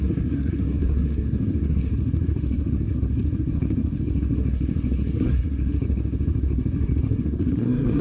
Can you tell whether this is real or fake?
fake